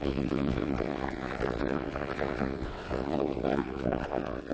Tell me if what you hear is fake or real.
fake